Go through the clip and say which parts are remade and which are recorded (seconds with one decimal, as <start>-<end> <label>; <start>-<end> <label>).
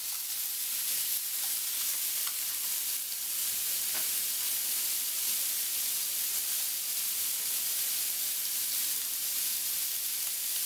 0.0-10.7 recorded